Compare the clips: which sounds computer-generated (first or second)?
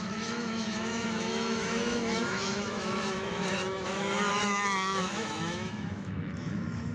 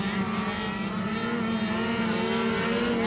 first